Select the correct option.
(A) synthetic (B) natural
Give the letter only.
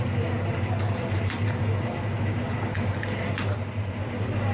B